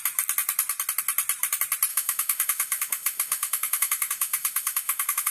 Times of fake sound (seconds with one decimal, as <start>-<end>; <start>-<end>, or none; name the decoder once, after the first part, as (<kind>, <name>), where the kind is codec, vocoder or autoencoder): 1.9-5.3 (autoencoder, DAC-VAE)